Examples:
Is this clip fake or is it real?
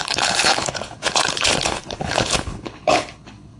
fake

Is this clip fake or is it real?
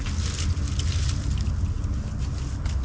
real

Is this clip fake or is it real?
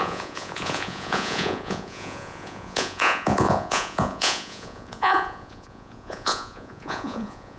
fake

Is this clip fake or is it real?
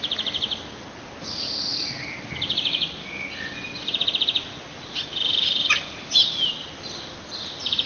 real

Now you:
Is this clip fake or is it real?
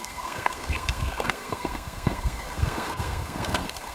fake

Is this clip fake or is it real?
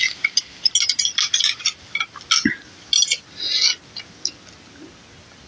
real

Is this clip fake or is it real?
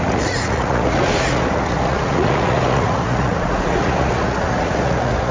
fake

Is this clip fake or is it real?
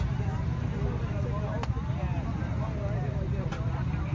real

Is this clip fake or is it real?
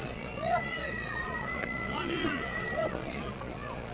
fake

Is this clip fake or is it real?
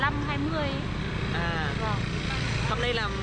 real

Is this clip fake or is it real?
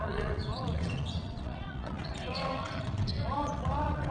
fake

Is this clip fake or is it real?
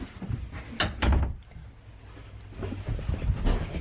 real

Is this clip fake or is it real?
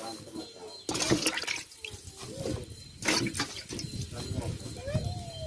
real